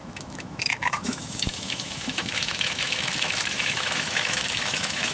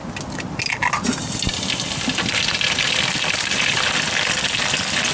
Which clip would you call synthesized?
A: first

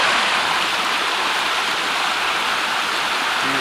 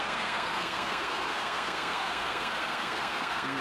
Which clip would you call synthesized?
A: second